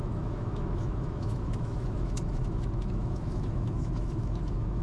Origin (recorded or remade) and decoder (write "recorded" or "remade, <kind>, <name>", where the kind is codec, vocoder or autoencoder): remade, autoencoder, DAC-VAE